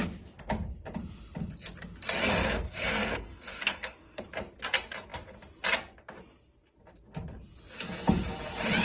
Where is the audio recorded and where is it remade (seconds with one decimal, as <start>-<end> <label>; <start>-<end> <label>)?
0.0-2.2 recorded; 2.2-4.2 remade; 4.2-8.8 recorded